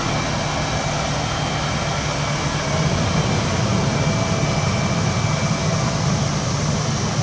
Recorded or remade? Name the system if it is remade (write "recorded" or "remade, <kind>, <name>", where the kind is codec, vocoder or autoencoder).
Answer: recorded